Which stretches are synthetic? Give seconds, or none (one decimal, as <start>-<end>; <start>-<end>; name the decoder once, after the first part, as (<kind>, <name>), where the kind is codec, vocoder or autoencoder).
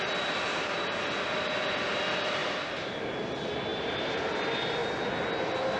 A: 2.4-2.9 (vocoder, BigVGAN v2); 3.7-4.3